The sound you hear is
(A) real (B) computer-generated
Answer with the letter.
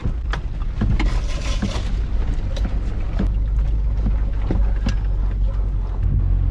A